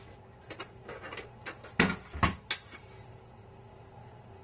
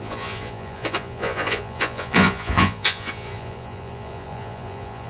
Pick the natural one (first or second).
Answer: first